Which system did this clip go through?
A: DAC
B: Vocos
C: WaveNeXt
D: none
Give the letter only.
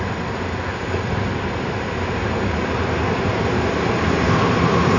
D